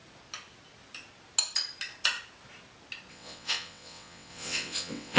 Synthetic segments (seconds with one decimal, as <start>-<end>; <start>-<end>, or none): 3.1-5.2